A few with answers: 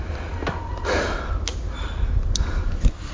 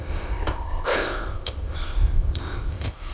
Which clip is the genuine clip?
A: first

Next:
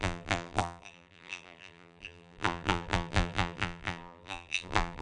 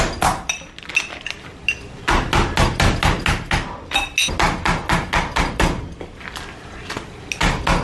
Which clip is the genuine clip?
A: second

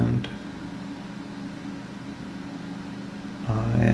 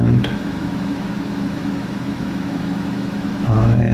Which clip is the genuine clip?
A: first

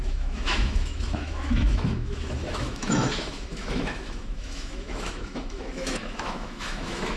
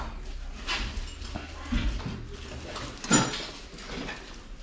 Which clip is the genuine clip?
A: second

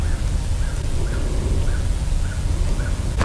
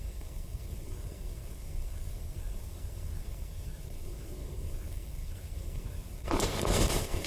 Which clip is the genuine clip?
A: first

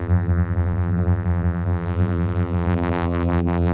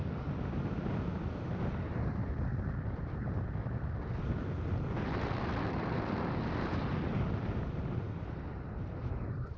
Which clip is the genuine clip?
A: second